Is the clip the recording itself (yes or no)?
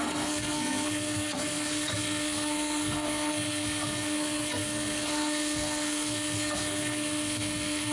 no